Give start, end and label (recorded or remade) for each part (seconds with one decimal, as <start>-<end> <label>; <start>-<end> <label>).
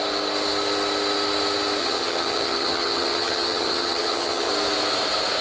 0.0-1.8 recorded; 1.8-4.5 remade; 4.5-5.4 recorded